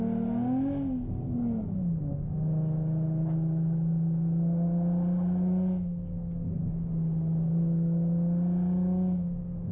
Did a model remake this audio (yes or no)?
no